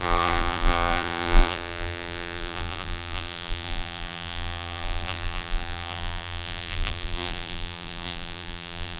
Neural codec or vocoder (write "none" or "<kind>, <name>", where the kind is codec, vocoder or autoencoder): vocoder, BigVGAN v2